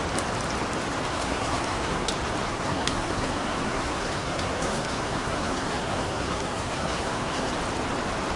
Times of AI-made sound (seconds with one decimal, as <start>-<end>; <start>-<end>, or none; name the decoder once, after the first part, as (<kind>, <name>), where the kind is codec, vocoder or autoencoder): 1.1-2.1 (codec, SNAC); 2.5-7.5